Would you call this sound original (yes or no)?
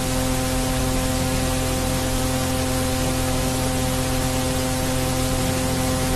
yes